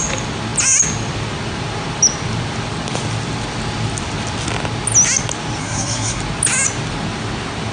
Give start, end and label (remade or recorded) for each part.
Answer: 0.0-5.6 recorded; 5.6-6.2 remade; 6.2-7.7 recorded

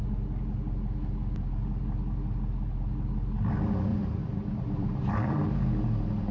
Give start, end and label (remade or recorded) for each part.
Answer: 0.0-3.9 recorded; 3.9-5.5 remade; 5.5-6.3 recorded

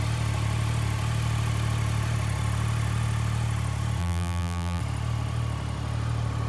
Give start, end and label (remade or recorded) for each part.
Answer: 0.0-4.0 recorded; 4.0-4.8 remade; 4.8-6.5 recorded

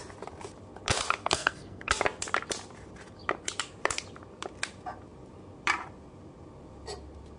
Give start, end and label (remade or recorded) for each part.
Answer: 0.0-1.2 recorded; 1.2-1.9 remade; 1.9-7.4 recorded

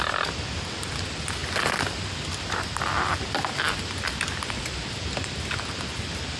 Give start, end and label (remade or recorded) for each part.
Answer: 0.0-6.4 recorded

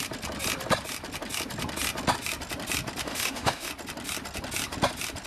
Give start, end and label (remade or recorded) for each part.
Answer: 0.0-3.0 recorded; 3.0-3.7 remade; 3.7-5.3 recorded

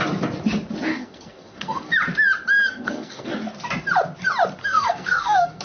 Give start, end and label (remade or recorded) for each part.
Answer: 0.0-0.9 recorded; 0.9-1.9 remade; 1.9-2.6 recorded; 2.6-3.3 remade; 3.3-4.6 recorded; 4.6-5.6 remade

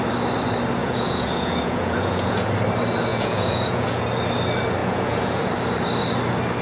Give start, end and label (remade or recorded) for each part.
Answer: 0.0-0.8 recorded; 0.8-2.5 remade; 2.5-3.1 recorded; 3.1-4.1 remade; 4.1-4.8 recorded; 4.8-5.5 remade; 5.5-6.6 recorded